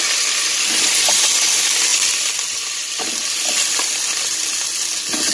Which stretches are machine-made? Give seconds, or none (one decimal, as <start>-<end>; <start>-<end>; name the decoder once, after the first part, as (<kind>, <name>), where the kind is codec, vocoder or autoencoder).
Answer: none